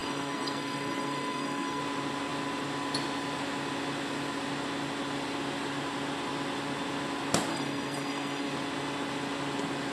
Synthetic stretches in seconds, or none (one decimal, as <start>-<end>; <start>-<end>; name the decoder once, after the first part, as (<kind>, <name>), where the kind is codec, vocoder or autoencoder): 0.0-1.8 (codec, SNAC); 7.5-8.5